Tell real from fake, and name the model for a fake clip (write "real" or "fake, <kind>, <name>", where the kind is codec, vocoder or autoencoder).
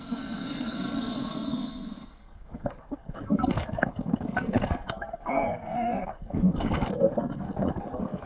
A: fake, codec, SNAC